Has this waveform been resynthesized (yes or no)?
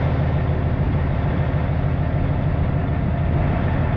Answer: no